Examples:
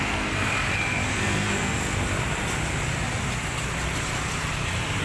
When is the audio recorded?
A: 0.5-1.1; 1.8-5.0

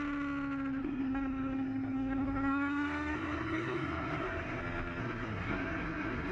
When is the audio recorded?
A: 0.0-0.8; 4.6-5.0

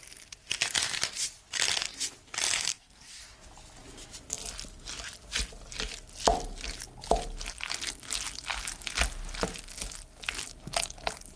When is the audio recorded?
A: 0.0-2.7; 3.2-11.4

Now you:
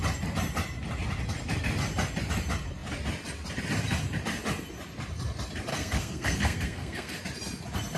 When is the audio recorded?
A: 0.0-5.7; 7.2-8.0

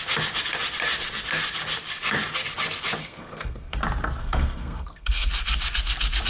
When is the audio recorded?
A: 0.0-3.0; 3.8-4.2; 5.3-6.3